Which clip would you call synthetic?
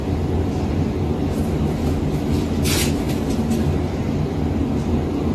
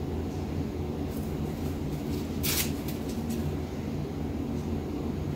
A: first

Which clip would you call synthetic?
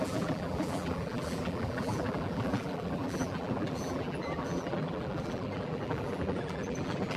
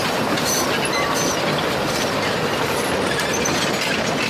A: first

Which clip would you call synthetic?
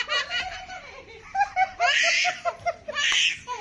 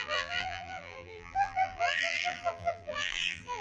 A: second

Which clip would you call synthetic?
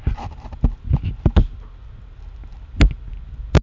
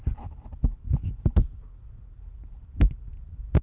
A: second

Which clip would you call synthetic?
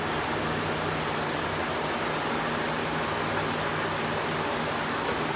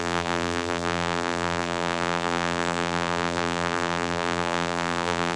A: second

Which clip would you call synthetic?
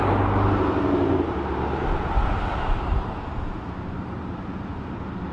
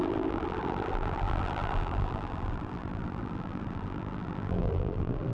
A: second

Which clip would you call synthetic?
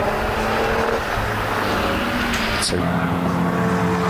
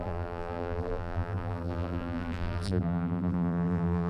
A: second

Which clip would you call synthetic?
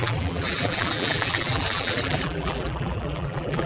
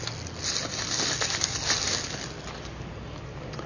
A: first